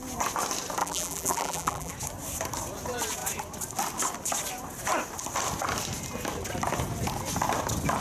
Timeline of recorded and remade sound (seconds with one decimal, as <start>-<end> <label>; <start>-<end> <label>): 0.0-0.8 recorded; 0.8-1.9 remade; 1.9-8.0 recorded